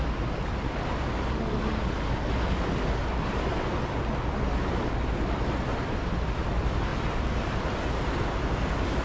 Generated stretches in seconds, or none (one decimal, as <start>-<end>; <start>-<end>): none